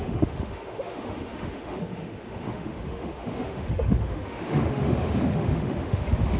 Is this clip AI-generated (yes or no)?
yes